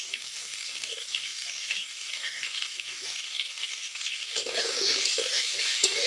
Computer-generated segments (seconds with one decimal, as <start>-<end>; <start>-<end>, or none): 0.0-6.1